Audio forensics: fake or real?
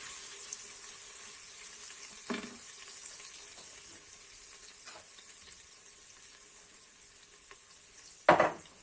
real